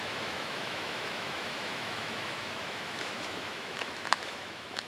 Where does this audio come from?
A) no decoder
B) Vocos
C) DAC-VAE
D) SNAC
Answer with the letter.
C